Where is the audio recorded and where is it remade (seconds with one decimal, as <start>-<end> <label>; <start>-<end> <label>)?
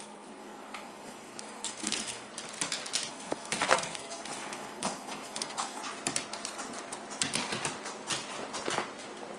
0.0-2.3 remade; 2.3-3.1 recorded; 3.1-5.8 remade; 5.8-9.4 recorded